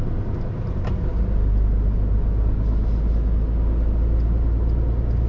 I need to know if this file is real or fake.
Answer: real